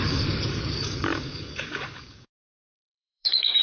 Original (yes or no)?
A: no